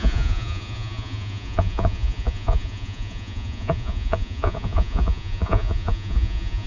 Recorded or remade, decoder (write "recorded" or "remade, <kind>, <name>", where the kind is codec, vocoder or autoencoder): remade, vocoder, Vocos